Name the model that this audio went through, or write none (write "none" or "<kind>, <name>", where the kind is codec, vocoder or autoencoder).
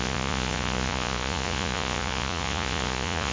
vocoder, Vocos